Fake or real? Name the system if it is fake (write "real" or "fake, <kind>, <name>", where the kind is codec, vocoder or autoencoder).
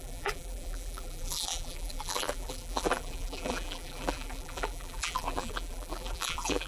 fake, vocoder, BigVGAN v2